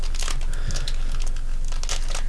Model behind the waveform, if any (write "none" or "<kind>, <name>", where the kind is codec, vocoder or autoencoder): none